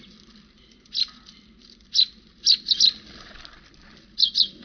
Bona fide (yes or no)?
yes